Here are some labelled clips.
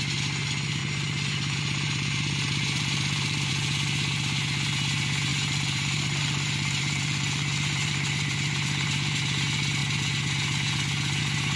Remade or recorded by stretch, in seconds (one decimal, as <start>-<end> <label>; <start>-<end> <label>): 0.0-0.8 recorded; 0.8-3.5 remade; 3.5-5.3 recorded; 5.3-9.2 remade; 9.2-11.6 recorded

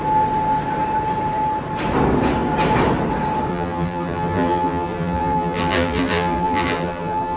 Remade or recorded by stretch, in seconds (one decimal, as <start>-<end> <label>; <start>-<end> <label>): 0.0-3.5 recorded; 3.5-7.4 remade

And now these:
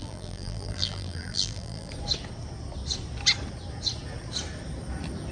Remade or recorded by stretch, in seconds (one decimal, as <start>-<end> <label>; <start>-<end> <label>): 0.0-1.9 remade; 1.9-5.3 recorded

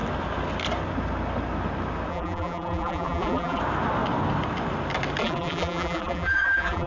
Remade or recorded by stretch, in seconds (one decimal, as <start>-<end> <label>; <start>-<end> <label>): 0.0-2.1 recorded; 2.1-3.6 remade; 3.6-5.2 recorded; 5.2-6.9 remade

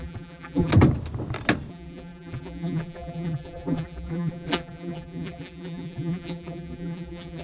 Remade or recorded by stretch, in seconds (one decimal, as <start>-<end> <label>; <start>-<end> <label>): 0.0-0.7 remade; 0.7-1.7 recorded; 1.7-7.4 remade

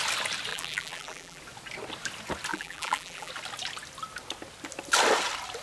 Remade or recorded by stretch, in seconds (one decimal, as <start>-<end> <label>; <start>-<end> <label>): 0.0-0.5 recorded; 0.5-1.4 remade; 1.4-2.5 recorded; 2.5-3.3 remade; 3.3-5.6 recorded

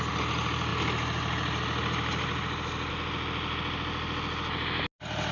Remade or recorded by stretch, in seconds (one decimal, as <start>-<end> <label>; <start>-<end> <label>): 0.0-5.3 recorded